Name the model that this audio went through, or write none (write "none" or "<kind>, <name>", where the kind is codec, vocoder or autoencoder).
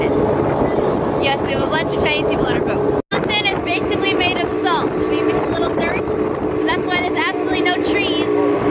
none